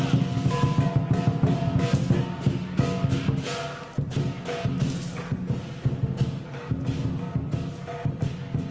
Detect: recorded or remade recorded